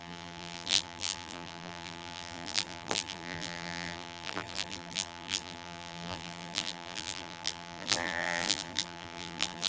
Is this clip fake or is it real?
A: fake